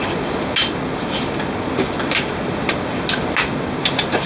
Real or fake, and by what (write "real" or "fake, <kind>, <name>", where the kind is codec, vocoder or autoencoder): real